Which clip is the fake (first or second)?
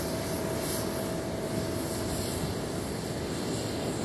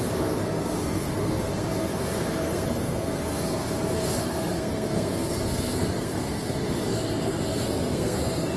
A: second